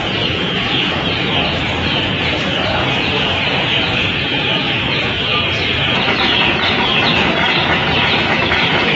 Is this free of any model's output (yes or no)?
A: no